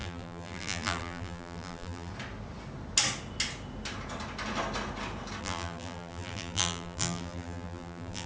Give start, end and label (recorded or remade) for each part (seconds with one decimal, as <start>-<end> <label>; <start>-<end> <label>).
0.0-2.1 remade; 2.1-5.4 recorded; 5.4-8.3 remade